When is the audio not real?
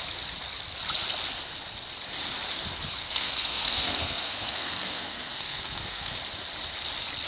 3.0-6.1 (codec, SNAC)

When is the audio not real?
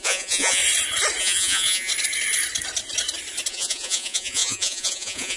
0.0-0.6 (vocoder, Vocos); 1.2-1.9; 3.5-5.4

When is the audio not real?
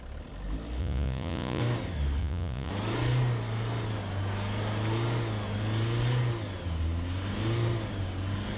0.8-1.6 (vocoder, Vocos); 2.2-2.7